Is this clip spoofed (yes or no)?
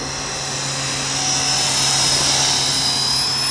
no